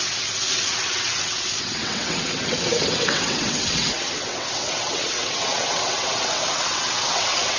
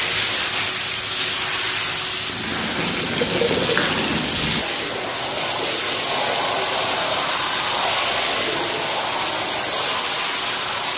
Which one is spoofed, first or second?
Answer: first